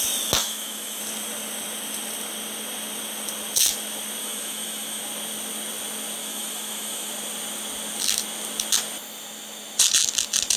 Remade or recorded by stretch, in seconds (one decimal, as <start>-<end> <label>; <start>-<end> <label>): 0.0-0.4 recorded; 0.4-1.0 remade; 1.0-4.2 recorded; 4.2-5.0 remade; 5.0-6.2 recorded; 6.2-7.1 remade; 7.1-10.6 recorded